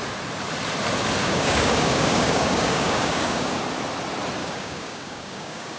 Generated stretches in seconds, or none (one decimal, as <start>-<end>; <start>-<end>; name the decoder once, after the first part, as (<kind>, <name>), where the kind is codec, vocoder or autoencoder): 1.2-3.6 (codec, DAC); 4.4-5.8